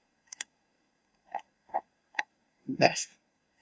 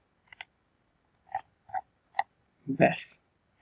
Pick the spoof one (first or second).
first